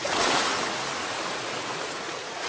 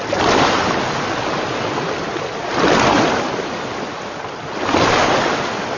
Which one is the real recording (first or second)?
second